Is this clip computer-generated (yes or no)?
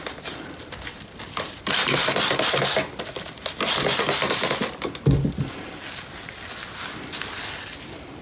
no